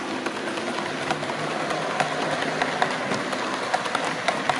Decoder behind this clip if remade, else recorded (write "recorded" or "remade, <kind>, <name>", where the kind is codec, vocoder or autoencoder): recorded